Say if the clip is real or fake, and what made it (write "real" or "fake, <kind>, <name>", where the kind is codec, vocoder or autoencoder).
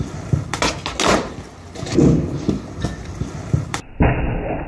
real